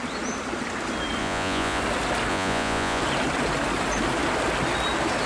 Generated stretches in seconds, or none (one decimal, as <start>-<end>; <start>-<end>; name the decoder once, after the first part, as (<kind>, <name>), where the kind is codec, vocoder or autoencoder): 1.2-1.8 (vocoder, Vocos); 2.3-3.0